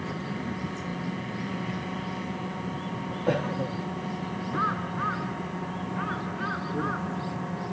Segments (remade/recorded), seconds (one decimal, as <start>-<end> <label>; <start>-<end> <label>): 0.0-7.7 recorded